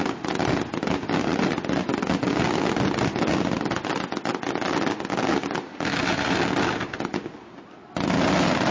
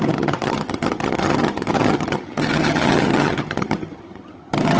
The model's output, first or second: second